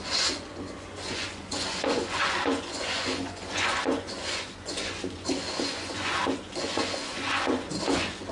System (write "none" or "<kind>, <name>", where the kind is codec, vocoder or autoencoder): vocoder, Vocos